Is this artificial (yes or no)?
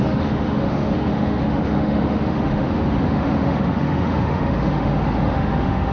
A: yes